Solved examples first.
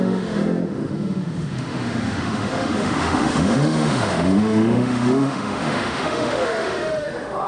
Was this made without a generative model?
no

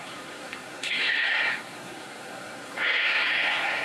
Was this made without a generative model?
no